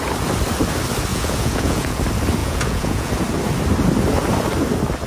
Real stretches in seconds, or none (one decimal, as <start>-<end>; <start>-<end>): 0.0-1.1; 2.0-2.4; 3.1-5.1